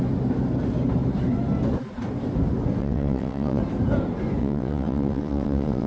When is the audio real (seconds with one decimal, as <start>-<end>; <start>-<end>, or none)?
0.0-2.8; 3.6-4.4